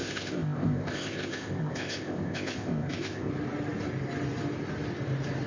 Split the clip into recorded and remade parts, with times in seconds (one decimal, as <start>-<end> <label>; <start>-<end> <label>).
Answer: 0.0-3.3 remade; 3.3-5.5 recorded